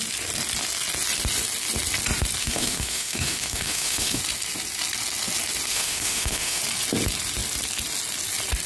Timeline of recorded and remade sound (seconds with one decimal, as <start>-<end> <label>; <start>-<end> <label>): 0.0-2.4 recorded; 2.4-4.2 remade; 4.2-5.7 recorded; 5.7-6.6 remade; 6.6-8.7 recorded